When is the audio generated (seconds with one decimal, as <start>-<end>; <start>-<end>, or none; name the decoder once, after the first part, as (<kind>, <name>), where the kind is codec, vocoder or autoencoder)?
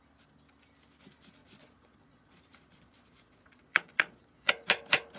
1.4-4.5 (vocoder, Vocos)